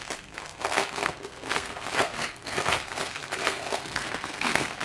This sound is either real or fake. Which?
fake